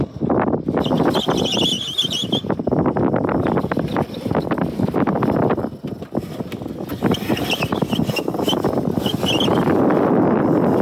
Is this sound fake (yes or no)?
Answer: no